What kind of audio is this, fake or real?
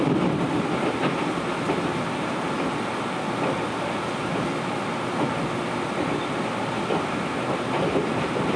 real